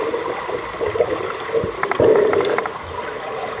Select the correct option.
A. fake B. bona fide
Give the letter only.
B